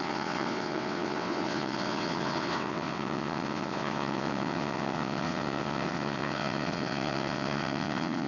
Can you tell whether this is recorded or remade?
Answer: remade